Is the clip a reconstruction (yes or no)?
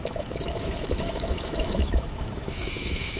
yes